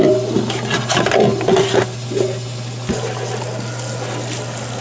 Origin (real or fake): real